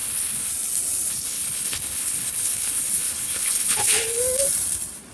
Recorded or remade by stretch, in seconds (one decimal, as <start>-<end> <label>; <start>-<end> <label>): 0.0-0.5 remade; 0.5-1.1 recorded; 1.1-4.2 remade; 4.2-5.1 recorded